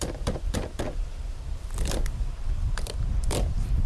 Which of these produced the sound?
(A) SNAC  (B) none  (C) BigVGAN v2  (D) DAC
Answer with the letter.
C